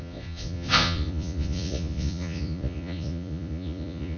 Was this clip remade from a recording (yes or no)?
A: yes